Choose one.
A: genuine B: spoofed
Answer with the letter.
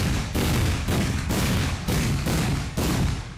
B